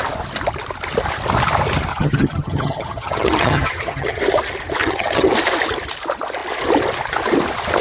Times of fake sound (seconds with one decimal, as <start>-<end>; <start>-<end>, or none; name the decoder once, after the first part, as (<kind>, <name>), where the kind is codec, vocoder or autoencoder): 1.9-4.2 (vocoder, HiFi-GAN); 4.8-5.3